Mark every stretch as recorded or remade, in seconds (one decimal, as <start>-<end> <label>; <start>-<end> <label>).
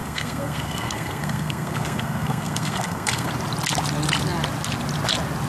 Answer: 0.0-3.3 remade; 3.3-5.5 recorded